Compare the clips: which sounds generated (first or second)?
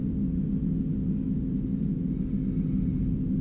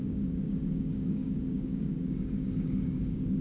second